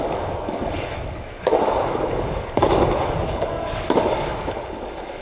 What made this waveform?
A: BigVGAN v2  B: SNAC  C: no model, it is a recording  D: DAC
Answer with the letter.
D